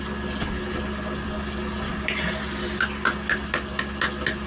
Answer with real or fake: real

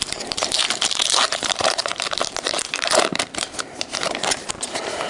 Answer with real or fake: fake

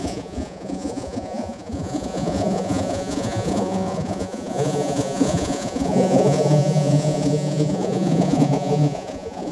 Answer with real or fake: fake